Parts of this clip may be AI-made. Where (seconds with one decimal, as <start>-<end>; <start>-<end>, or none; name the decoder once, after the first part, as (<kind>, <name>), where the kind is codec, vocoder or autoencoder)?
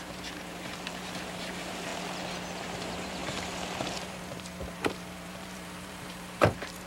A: 0.0-1.9 (vocoder, BigVGAN v2); 2.6-6.9